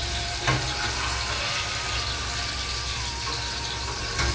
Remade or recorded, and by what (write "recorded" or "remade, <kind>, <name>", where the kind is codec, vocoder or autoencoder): recorded